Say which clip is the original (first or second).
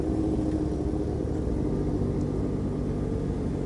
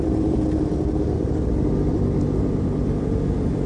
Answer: first